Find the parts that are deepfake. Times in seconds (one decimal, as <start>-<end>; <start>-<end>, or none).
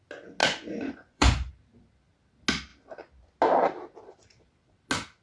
0.4-1.5